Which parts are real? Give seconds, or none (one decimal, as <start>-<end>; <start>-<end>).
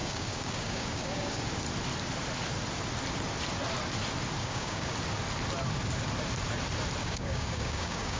1.4-4.4; 4.9-7.0